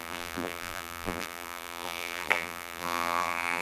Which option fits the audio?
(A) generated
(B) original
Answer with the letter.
A